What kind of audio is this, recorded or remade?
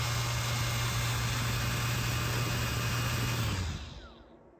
recorded